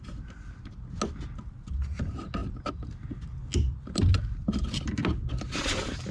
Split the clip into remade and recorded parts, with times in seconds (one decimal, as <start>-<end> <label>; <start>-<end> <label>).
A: 0.0-6.1 recorded